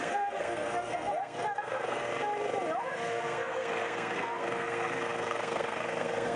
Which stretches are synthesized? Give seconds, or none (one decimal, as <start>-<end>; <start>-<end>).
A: 0.0-2.1; 2.8-6.4